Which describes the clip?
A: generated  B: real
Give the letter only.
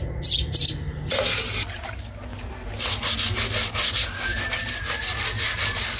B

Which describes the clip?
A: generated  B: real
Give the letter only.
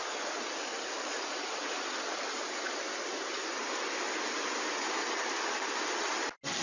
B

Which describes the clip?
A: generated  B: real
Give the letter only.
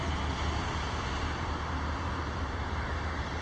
A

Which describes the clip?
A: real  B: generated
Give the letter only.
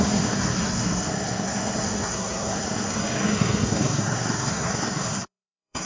B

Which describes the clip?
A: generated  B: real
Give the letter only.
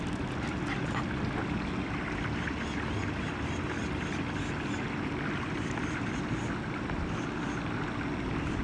B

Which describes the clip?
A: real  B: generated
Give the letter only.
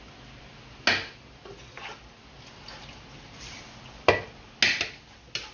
A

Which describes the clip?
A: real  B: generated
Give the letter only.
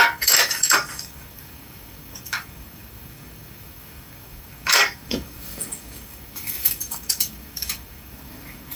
B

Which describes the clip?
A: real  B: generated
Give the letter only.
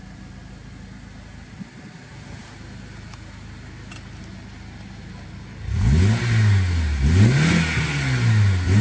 A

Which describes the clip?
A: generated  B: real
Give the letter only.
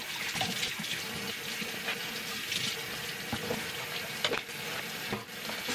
B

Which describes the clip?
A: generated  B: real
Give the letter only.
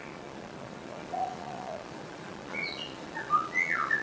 A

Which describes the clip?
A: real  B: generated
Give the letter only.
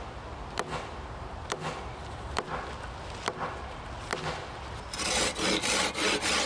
A